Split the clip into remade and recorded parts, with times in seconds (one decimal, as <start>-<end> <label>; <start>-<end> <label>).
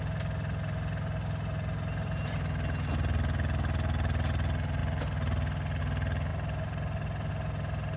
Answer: 0.0-8.0 recorded